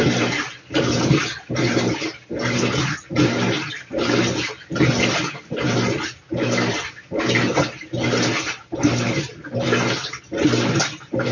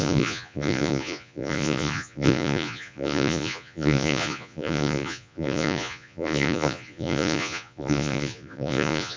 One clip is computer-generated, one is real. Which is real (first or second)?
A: first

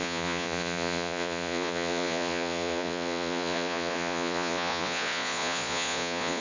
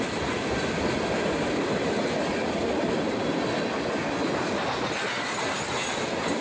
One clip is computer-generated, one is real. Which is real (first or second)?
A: second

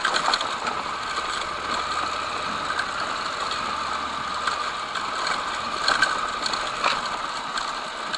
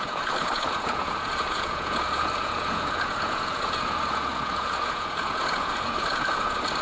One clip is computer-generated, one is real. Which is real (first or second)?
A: first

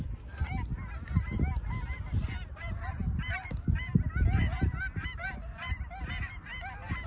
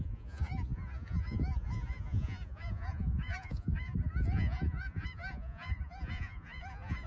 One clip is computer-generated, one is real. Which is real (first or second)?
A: first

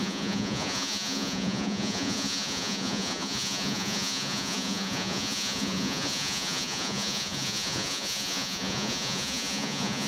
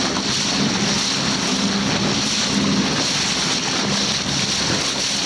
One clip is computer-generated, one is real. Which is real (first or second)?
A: second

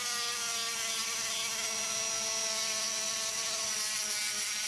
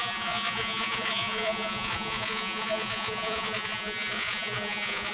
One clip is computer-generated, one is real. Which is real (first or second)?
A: first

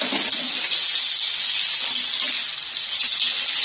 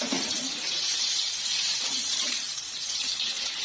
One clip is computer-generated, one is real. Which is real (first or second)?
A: first